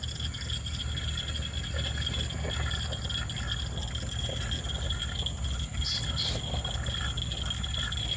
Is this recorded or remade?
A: recorded